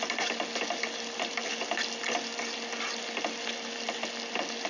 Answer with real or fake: real